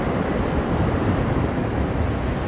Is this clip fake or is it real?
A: real